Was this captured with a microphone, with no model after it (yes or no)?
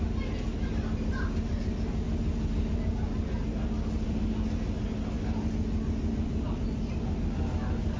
yes